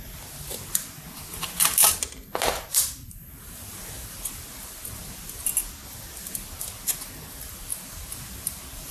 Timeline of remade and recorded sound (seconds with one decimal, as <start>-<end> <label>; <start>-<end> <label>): 0.0-2.7 recorded; 2.7-4.3 remade; 4.3-7.7 recorded; 7.7-8.2 remade; 8.2-8.9 recorded